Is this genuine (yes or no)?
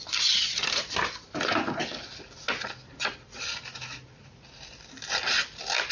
yes